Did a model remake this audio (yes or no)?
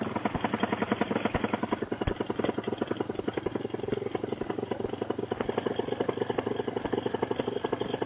no